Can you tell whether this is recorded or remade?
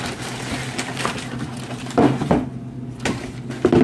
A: recorded